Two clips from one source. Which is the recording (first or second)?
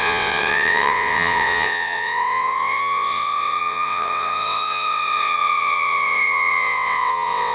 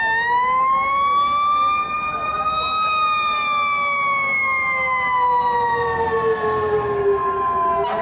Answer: second